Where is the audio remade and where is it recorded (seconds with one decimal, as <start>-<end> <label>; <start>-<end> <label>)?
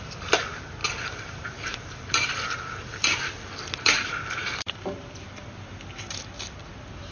0.0-0.8 recorded; 0.8-4.0 remade; 4.0-4.4 recorded; 4.4-6.6 remade; 6.6-7.1 recorded